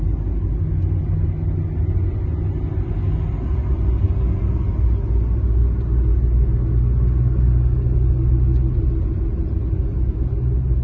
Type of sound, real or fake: real